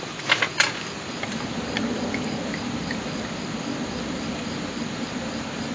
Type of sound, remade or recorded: recorded